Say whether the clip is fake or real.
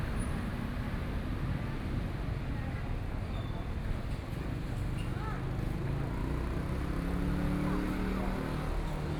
real